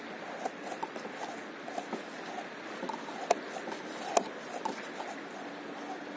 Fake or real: real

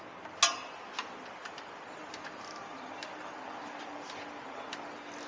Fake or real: real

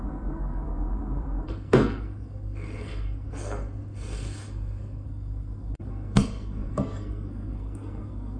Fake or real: fake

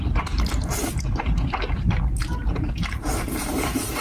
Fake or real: fake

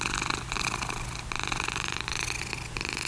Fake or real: real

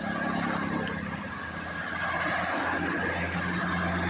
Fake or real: real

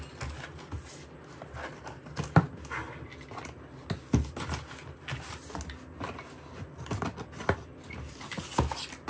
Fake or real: real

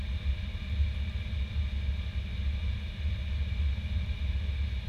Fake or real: real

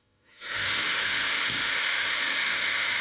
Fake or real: fake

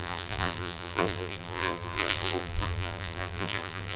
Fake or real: fake